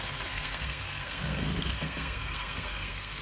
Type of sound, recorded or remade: remade